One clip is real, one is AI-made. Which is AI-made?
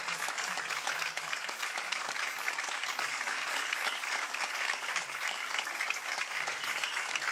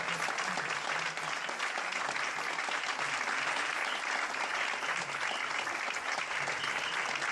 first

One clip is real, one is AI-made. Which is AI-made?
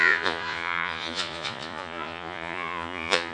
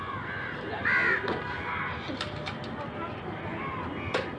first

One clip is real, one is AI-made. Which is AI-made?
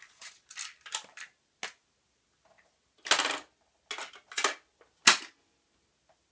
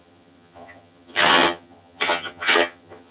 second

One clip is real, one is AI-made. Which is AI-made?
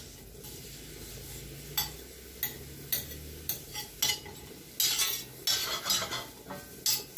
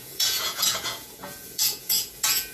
second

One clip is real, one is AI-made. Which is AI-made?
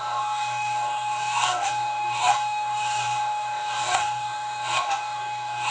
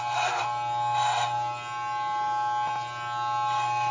first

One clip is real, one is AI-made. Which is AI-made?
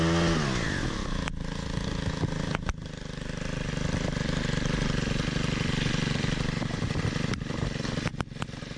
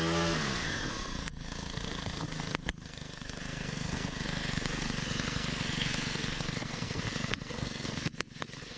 second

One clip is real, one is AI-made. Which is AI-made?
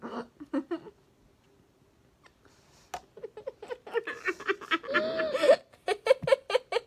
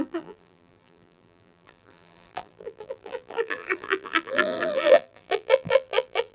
second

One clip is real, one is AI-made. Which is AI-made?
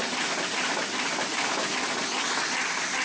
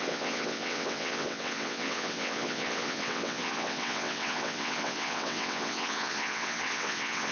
second